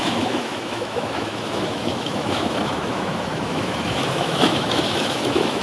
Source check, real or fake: fake